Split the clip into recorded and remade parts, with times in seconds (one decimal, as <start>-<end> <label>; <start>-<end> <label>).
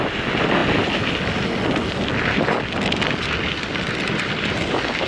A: 0.0-5.1 recorded